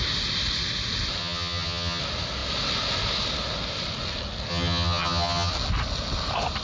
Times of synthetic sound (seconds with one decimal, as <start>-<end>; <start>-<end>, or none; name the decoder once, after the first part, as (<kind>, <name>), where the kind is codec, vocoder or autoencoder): 1.2-2.0 (vocoder, HiFi-GAN); 4.5-5.5